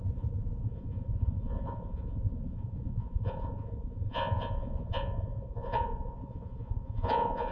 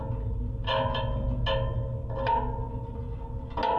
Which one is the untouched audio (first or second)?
second